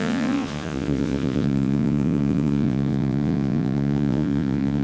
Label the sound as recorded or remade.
remade